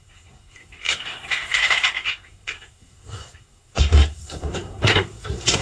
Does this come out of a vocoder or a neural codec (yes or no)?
yes